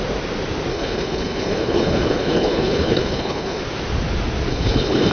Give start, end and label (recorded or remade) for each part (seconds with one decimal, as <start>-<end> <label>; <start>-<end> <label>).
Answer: 0.0-0.7 recorded; 0.7-3.6 remade; 3.6-4.5 recorded; 4.5-5.1 remade